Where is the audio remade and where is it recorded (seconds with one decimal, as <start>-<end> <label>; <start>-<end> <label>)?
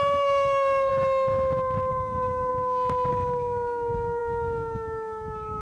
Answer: 0.0-0.9 remade; 0.9-1.9 recorded; 1.9-2.5 remade; 2.5-3.1 recorded; 3.1-5.6 remade